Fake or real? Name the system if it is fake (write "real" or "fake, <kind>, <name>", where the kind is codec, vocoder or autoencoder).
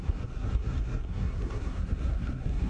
fake, codec, SNAC